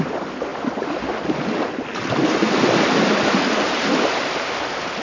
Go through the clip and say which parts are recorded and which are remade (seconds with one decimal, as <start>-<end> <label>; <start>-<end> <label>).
0.0-5.0 recorded